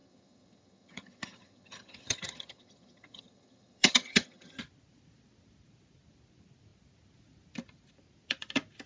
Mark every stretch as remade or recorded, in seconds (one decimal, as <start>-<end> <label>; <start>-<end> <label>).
0.0-4.6 remade; 4.6-8.9 recorded